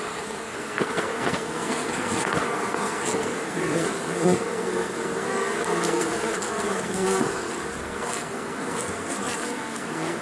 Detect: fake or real fake